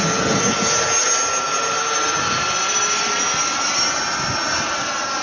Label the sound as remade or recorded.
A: recorded